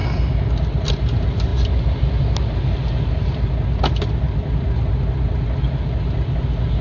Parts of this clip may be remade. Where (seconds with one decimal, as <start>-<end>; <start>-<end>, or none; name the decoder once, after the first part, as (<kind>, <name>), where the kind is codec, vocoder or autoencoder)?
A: none